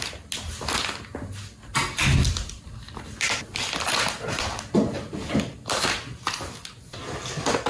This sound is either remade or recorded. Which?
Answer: recorded